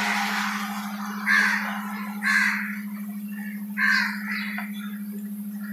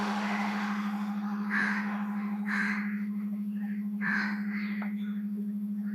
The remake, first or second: second